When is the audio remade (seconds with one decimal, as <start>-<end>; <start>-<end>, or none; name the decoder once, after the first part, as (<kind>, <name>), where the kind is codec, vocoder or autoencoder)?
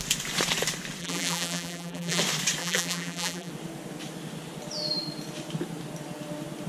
1.0-2.2 (vocoder, BigVGAN v2); 2.6-3.5